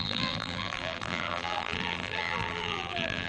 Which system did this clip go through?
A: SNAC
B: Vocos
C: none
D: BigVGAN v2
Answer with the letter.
D